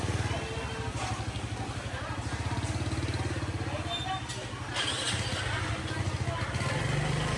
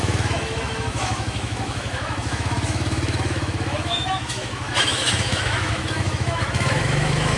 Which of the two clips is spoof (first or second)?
second